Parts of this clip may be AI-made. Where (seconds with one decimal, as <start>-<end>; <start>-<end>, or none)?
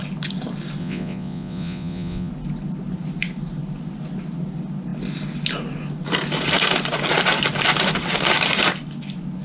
0.8-2.3